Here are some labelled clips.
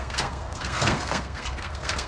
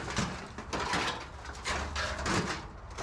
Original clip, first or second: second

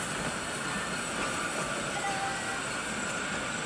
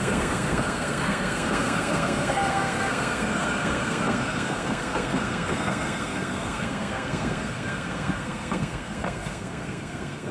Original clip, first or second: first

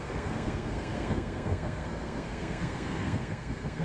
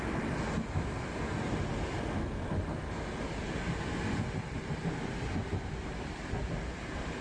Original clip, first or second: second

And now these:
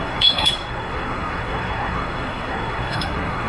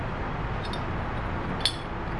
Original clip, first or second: second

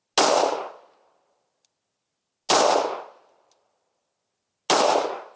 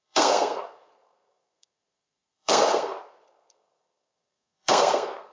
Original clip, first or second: first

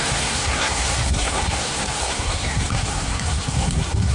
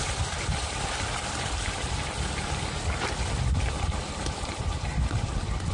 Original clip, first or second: second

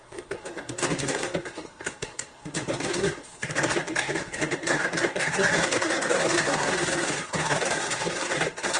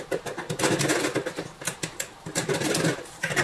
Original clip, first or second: second